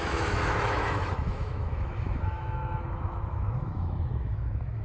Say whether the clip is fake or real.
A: fake